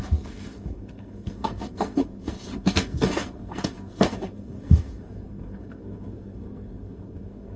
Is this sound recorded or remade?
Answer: remade